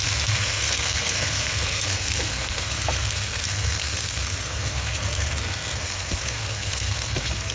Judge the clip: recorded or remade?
remade